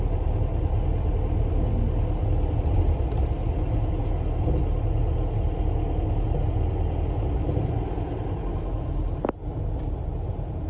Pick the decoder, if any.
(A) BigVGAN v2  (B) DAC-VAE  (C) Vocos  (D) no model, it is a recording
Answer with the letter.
D